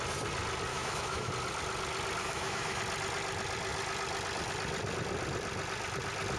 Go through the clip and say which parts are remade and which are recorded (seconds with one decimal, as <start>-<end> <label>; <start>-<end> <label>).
0.0-0.7 recorded; 0.7-1.3 remade; 1.3-2.2 recorded; 2.2-2.8 remade; 2.8-6.4 recorded

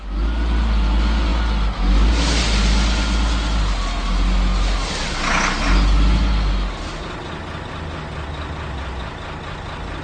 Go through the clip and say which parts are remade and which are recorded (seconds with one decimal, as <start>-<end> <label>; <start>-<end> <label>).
0.0-10.0 recorded

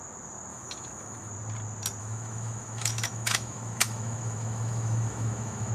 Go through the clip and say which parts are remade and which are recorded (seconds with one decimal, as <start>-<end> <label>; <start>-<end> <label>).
0.0-0.5 recorded; 0.5-1.3 remade; 1.3-2.0 recorded; 2.0-5.7 remade

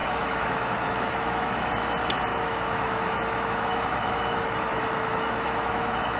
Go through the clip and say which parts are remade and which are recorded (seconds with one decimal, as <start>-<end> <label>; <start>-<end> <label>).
0.0-1.7 remade; 1.7-2.3 recorded; 2.3-6.2 remade

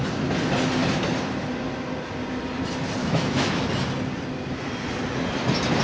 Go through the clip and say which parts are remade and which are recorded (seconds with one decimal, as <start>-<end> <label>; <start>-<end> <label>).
0.0-3.0 recorded; 3.0-3.7 remade; 3.7-5.8 recorded

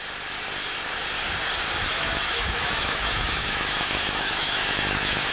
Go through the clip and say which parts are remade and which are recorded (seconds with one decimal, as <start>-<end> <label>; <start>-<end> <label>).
0.0-1.9 recorded; 1.9-5.3 remade